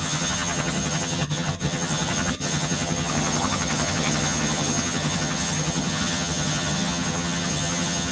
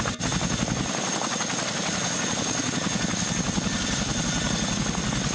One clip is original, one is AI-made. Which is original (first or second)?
second